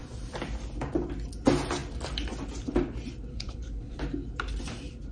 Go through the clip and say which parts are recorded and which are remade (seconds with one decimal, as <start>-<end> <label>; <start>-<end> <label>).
0.0-3.3 recorded; 3.3-4.0 remade; 4.0-5.1 recorded

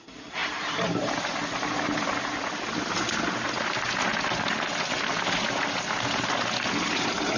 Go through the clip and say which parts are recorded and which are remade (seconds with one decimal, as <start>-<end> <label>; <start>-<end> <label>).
0.0-7.4 recorded

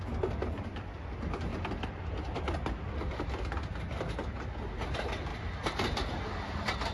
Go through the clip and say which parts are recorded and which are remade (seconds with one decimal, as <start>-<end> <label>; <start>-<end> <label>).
0.0-6.9 recorded

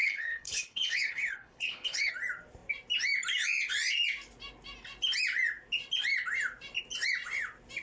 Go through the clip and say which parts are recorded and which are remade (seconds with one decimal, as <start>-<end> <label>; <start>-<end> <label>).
0.0-2.1 remade; 2.1-7.8 recorded

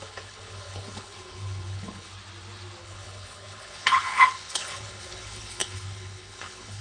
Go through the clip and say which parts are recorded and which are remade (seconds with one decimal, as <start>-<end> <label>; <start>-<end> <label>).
0.0-2.1 remade; 2.1-2.8 recorded; 2.8-6.8 remade